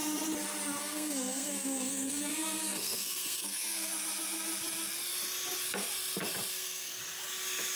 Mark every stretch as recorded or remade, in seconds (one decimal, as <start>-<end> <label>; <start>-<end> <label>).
0.0-0.8 recorded; 0.8-3.9 remade; 3.9-6.5 recorded; 6.5-7.0 remade; 7.0-7.8 recorded